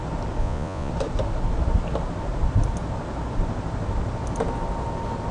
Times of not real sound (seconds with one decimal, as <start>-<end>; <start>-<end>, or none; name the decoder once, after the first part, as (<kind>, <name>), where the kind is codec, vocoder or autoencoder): 0.4-0.9 (vocoder, Vocos)